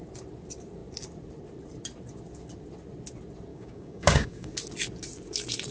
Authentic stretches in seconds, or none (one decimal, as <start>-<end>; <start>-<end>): 0.0-3.5; 4.5-5.7